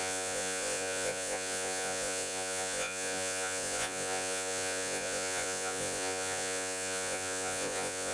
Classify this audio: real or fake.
fake